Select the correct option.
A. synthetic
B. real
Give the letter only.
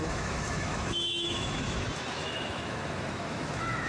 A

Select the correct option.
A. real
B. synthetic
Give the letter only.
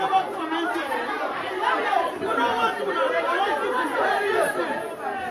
B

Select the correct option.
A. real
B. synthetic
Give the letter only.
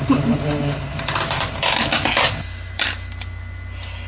A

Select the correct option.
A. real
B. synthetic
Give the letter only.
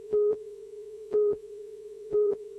B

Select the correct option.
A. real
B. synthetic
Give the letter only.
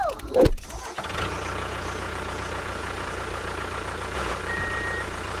B